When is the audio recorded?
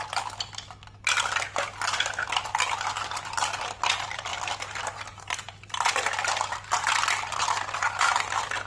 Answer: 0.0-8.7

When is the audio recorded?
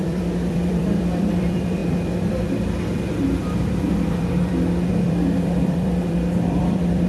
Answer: none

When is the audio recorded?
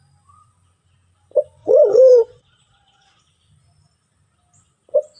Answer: 0.0-1.6; 3.2-5.2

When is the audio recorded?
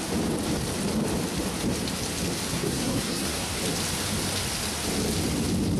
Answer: 0.0-2.5; 3.6-5.8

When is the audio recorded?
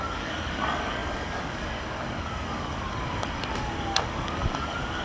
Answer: none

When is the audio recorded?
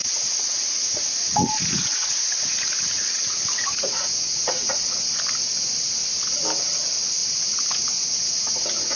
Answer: 5.2-7.2